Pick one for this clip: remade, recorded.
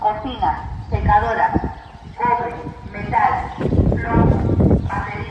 recorded